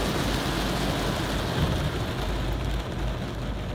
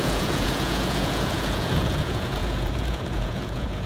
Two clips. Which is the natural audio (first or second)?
first